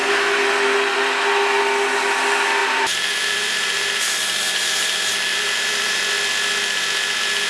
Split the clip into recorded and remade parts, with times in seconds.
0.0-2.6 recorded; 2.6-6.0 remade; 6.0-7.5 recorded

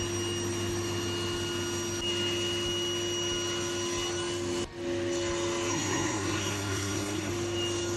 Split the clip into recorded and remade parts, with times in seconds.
0.0-5.7 recorded; 5.7-7.3 remade; 7.3-8.0 recorded

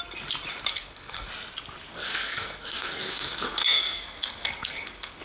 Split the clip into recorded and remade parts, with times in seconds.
0.0-0.7 recorded; 0.7-1.3 remade; 1.3-1.9 recorded; 1.9-5.2 remade

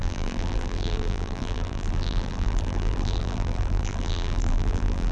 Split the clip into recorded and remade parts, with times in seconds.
0.0-5.1 remade

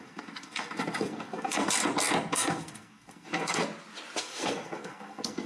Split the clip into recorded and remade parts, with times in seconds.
0.0-1.8 remade; 1.8-2.3 recorded; 2.3-3.6 remade; 3.6-4.2 recorded; 4.2-5.5 remade

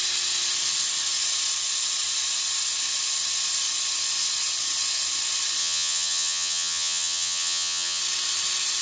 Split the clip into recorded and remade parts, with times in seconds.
0.0-5.6 recorded; 5.6-8.0 remade; 8.0-8.8 recorded

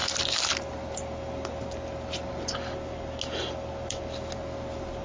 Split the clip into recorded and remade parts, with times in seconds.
0.0-5.0 recorded

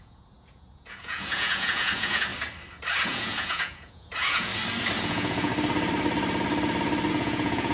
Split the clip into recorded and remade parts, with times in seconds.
0.0-2.3 remade; 2.3-3.0 recorded; 3.0-4.5 remade; 4.5-5.0 recorded; 5.0-5.5 remade; 5.5-7.1 recorded; 7.1-7.7 remade